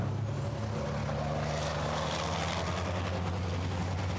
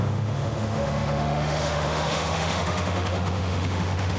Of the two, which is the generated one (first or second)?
second